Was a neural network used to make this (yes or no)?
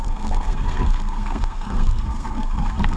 yes